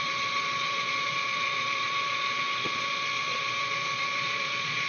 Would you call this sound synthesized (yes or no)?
yes